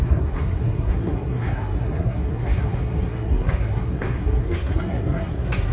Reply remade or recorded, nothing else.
remade